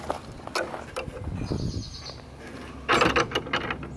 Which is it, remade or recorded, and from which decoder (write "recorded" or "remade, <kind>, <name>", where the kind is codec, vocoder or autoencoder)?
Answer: recorded